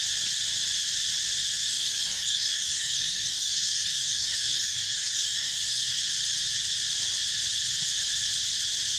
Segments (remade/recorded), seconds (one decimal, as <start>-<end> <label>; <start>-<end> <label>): 0.0-1.7 recorded; 1.7-6.0 remade; 6.0-9.0 recorded